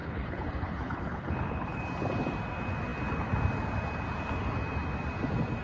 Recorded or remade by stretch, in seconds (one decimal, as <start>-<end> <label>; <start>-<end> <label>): 0.0-1.8 remade; 1.8-5.6 recorded